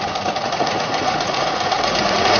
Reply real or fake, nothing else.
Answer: fake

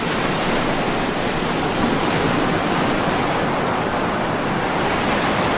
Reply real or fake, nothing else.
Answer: real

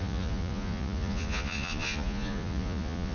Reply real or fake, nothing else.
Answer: fake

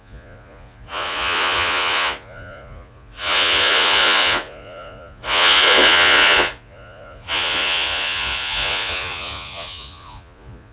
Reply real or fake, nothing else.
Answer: fake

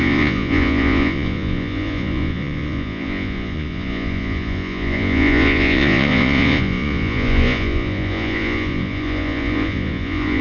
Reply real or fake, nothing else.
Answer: fake